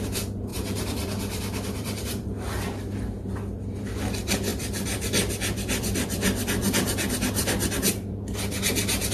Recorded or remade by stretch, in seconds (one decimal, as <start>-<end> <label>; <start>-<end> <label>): 0.0-0.5 recorded; 0.5-3.8 remade; 3.8-4.5 recorded; 4.5-8.4 remade; 8.4-9.1 recorded